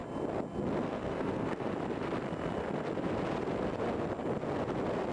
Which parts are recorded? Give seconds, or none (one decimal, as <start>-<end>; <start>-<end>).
0.0-0.8; 1.7-5.1

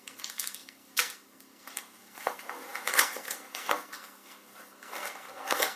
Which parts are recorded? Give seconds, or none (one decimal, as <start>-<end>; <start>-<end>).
none